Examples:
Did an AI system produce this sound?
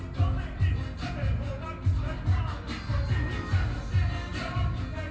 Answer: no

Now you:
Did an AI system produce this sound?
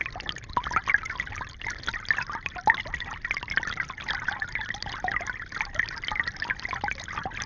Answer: no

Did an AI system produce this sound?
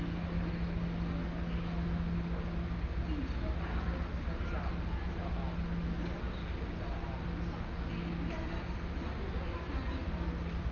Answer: no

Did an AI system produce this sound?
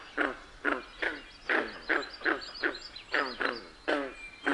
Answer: no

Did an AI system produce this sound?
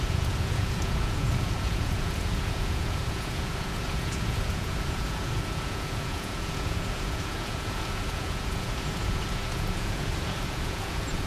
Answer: yes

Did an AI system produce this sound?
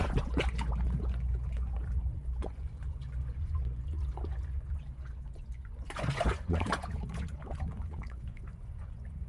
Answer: yes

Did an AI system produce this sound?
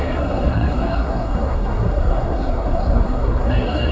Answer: yes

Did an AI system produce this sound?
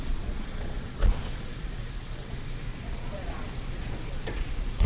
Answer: yes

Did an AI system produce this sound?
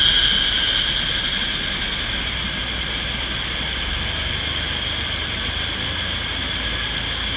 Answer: no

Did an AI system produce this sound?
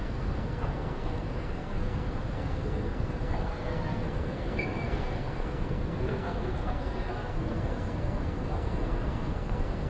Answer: yes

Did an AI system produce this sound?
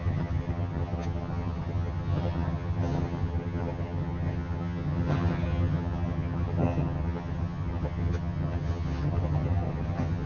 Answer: yes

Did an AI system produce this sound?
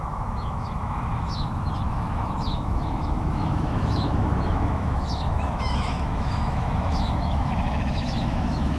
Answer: yes